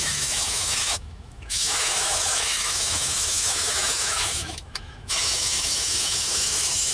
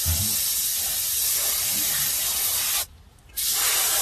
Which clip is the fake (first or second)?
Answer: first